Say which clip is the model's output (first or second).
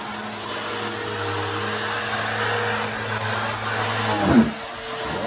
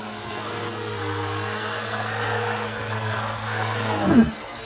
second